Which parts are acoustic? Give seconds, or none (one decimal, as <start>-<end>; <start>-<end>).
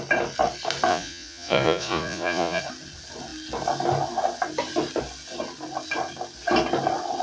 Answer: 0.0-0.9; 2.6-7.2